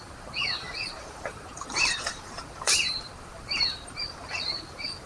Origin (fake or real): fake